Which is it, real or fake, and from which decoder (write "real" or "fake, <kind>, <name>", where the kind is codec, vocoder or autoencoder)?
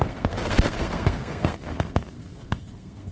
fake, codec, SNAC